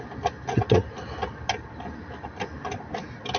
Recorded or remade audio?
recorded